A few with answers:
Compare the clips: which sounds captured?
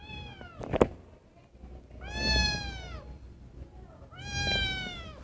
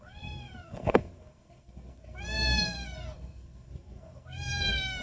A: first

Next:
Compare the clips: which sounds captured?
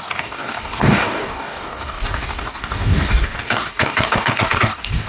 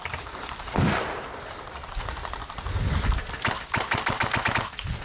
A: second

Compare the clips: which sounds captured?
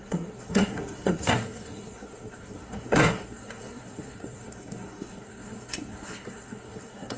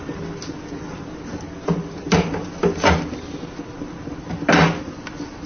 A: second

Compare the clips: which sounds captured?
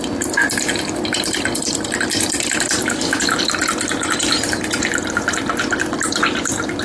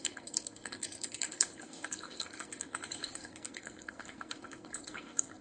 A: first